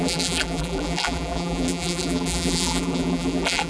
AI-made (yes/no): yes